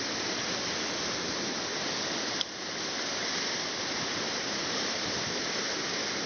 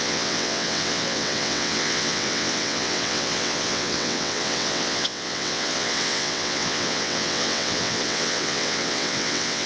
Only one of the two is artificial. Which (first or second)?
second